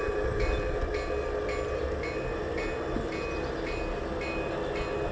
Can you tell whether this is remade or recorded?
recorded